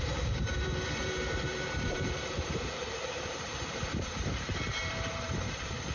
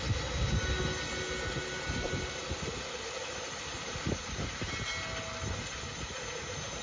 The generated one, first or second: first